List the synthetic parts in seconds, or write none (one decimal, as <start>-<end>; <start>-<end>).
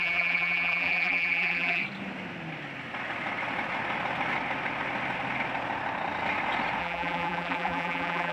0.0-1.8; 6.8-8.3